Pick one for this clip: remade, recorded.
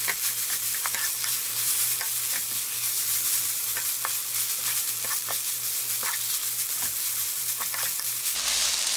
recorded